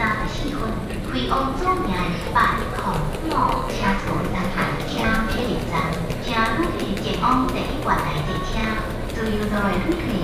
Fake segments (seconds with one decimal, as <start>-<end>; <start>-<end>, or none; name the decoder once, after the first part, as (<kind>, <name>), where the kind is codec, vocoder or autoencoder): 3.5-5.4 (codec, SNAC)

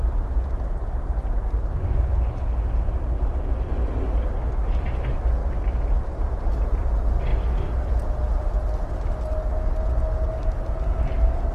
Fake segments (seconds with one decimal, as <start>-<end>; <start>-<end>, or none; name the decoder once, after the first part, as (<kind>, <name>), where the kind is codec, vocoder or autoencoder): none

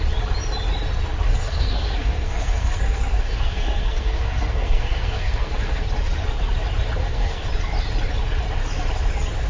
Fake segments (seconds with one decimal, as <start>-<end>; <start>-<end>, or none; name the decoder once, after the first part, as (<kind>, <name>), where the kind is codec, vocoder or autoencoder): 1.3-5.8 (codec, SNAC); 7.0-7.5